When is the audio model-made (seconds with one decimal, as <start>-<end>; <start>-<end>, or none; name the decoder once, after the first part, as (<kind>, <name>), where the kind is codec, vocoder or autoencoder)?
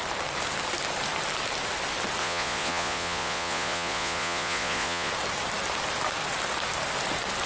2.2-5.1 (vocoder, Vocos)